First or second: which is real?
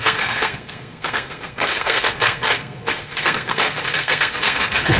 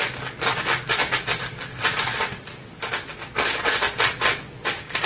second